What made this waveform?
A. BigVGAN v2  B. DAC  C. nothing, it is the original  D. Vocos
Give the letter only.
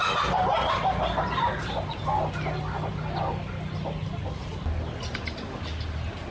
C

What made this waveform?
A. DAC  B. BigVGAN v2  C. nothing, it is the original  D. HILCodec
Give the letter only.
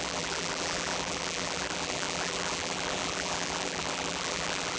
B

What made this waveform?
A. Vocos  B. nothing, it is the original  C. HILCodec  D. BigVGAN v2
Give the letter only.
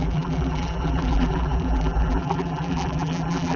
D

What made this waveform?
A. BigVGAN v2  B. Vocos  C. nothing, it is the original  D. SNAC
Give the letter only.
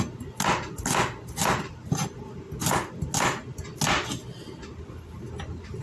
C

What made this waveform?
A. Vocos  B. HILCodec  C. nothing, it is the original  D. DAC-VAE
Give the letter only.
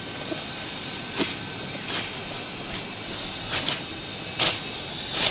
C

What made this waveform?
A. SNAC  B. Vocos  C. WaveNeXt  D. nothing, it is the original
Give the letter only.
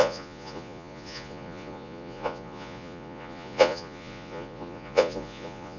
B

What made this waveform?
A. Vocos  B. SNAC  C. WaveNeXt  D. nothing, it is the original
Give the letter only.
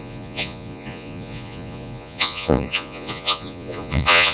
A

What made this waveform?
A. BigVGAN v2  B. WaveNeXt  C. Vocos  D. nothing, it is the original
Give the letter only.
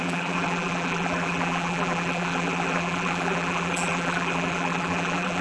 A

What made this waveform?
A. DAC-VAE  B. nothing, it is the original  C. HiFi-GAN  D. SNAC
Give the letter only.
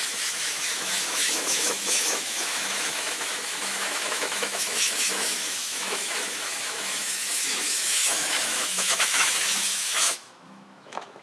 A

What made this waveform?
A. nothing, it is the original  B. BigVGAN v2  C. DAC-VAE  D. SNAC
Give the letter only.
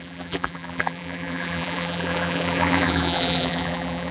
B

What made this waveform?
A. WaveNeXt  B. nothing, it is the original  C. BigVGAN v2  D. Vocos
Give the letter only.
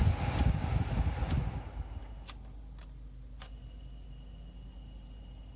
B